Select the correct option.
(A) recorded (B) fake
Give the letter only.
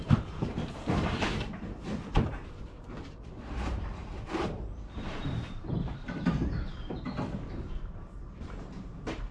B